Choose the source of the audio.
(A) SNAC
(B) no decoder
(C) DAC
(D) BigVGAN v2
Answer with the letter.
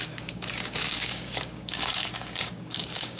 C